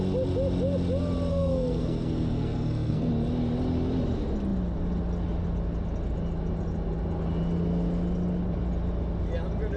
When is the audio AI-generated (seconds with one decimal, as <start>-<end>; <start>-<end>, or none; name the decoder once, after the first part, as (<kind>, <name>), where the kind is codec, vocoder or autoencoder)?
1.3-3.1 (codec, SNAC)